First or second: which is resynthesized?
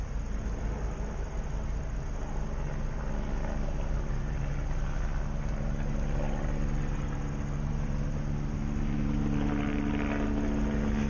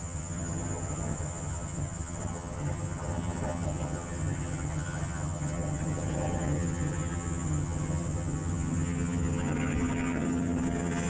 second